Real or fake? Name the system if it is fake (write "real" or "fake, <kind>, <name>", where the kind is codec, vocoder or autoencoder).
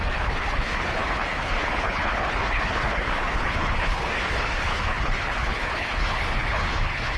fake, codec, HILCodec